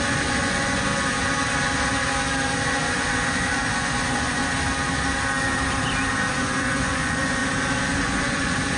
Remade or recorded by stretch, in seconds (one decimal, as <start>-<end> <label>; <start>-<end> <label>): 0.0-0.9 remade; 0.9-2.7 recorded; 2.7-4.4 remade; 4.4-6.3 recorded; 6.3-7.4 remade; 7.4-8.0 recorded; 8.0-8.8 remade